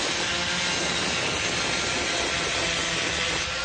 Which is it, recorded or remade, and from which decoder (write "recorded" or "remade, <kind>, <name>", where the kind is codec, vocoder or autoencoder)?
recorded